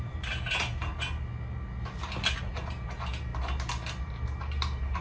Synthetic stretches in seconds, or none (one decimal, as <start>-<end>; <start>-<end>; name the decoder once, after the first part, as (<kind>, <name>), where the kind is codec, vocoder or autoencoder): 0.0-0.9 (vocoder, BigVGAN v2); 2.4-3.3; 4.0-5.0